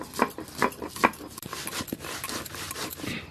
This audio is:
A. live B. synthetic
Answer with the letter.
B